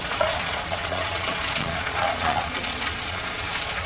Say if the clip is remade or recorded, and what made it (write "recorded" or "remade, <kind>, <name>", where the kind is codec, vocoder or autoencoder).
remade, vocoder, Vocos